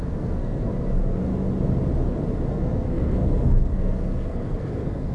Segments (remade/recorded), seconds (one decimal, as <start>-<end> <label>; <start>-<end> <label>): 0.0-1.3 remade; 1.3-2.5 recorded; 2.5-5.1 remade